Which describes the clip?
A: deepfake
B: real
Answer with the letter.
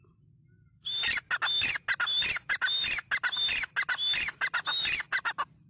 B